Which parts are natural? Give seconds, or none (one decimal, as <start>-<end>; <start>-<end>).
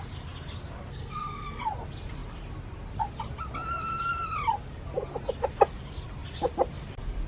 0.0-0.9; 1.6-7.3